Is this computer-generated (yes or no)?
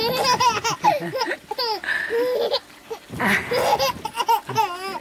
no